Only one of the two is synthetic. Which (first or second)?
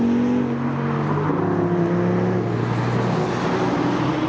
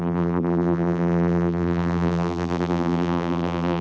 second